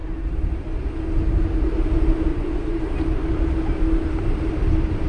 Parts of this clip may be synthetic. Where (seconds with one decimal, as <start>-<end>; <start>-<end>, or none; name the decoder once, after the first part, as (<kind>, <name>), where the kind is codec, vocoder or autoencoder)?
2.3-2.8 (vocoder, Vocos)